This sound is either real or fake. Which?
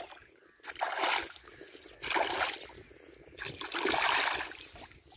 real